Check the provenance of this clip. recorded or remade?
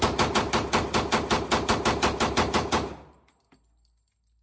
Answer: recorded